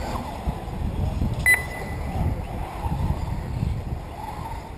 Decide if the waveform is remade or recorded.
recorded